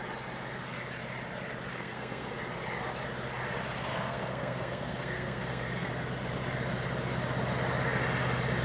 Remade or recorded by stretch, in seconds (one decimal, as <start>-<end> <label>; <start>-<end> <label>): 0.0-1.7 recorded; 1.7-2.3 remade; 2.3-3.9 recorded; 3.9-5.9 remade; 5.9-8.6 recorded